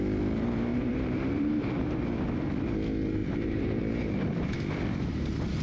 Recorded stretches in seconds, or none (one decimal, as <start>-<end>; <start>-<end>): 0.0-0.7; 2.0-3.2; 3.8-5.6